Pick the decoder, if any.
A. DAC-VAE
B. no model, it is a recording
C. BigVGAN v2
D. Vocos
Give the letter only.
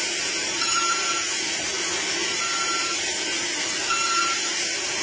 B